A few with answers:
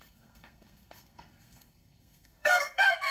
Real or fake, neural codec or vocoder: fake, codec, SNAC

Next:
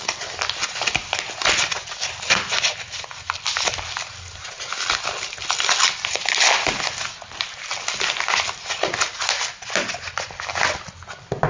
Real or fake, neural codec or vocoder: real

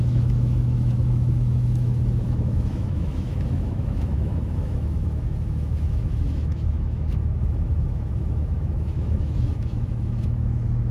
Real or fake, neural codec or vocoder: fake, autoencoder, DAC-VAE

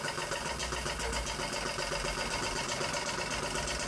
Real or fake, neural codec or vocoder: real